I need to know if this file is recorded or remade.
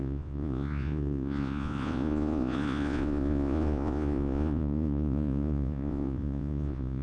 remade